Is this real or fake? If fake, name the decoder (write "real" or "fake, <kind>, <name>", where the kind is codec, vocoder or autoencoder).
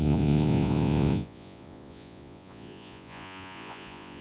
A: fake, vocoder, Vocos